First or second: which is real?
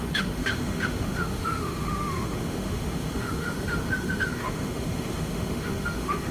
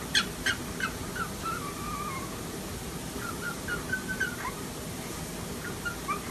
second